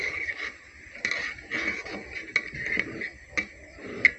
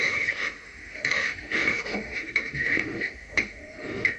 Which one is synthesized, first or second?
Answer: second